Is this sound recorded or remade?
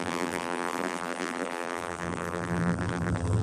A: remade